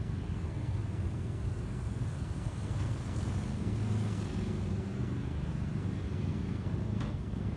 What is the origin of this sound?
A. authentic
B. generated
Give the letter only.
B